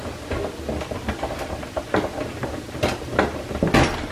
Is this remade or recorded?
recorded